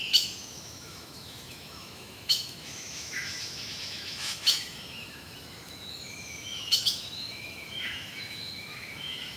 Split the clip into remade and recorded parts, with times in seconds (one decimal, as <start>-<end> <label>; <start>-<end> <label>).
0.0-9.4 remade